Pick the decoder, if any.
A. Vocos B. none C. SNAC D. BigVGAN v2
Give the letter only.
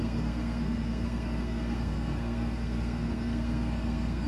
C